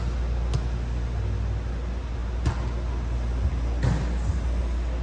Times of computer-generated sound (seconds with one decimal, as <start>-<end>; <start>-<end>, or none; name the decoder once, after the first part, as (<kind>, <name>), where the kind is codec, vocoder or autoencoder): none